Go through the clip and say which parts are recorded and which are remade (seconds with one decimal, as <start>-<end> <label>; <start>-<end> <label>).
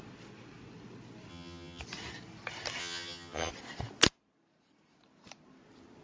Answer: 0.0-1.3 recorded; 1.3-1.8 remade; 1.8-2.8 recorded; 2.8-3.5 remade; 3.5-6.0 recorded